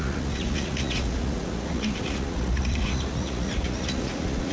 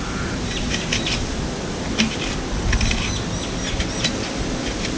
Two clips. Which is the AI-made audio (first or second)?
first